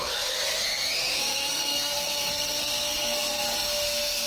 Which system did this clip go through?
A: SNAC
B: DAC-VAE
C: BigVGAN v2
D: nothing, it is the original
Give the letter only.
A